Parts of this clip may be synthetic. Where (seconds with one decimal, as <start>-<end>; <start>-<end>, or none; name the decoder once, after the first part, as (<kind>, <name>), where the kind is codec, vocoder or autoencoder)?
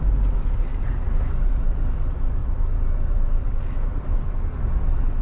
0.7-1.5 (vocoder, BigVGAN v2); 2.4-3.6